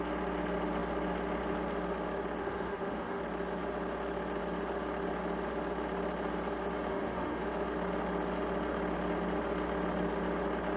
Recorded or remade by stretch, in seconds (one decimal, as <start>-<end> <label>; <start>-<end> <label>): 0.0-2.4 recorded; 2.4-3.2 remade; 3.2-6.9 recorded; 6.9-7.4 remade; 7.4-10.8 recorded